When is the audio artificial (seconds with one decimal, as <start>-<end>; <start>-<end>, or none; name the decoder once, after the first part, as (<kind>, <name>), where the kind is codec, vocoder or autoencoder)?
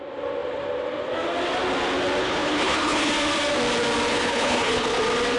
2.2-3.1 (codec, HILCodec); 4.1-5.0